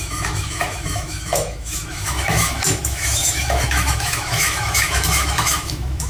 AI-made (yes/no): yes